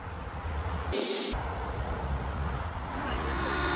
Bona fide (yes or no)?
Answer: no